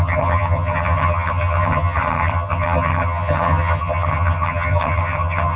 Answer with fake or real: fake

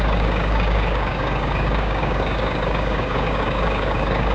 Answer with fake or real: fake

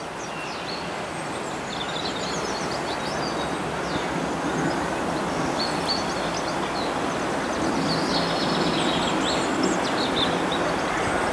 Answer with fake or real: real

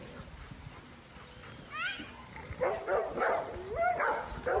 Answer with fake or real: real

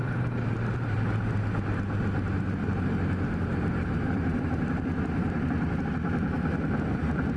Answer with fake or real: fake